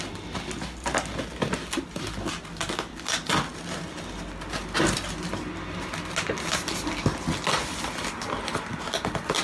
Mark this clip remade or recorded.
recorded